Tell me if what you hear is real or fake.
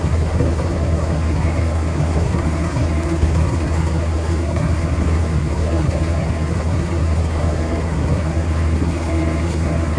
fake